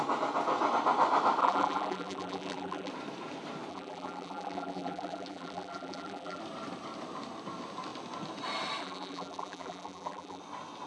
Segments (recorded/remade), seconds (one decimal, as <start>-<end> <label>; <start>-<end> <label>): 0.0-1.4 recorded; 1.4-2.9 remade; 2.9-3.7 recorded; 3.7-6.4 remade; 6.4-8.8 recorded; 8.8-10.4 remade; 10.4-10.9 recorded